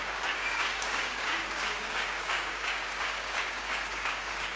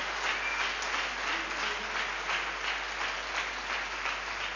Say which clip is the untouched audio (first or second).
second